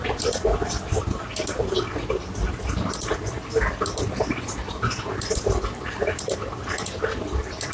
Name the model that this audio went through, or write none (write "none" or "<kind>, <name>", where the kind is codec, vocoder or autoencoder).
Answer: none